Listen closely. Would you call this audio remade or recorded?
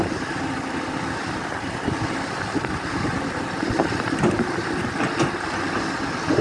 recorded